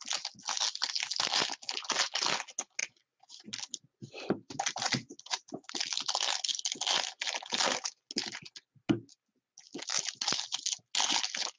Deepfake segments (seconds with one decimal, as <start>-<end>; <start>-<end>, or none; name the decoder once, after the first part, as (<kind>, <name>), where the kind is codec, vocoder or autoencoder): 2.8-5.7 (vocoder, BigVGAN v2)